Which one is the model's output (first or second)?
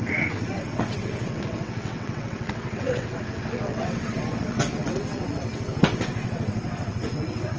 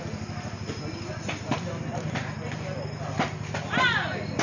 first